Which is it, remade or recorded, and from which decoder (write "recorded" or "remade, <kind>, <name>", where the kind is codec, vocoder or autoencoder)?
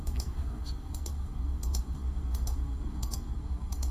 remade, codec, SNAC